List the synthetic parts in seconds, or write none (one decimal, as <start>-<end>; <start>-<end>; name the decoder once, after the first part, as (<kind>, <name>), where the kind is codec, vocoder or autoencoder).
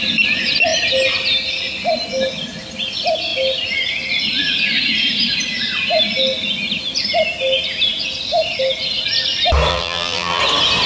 9.7-10.4 (vocoder, BigVGAN v2)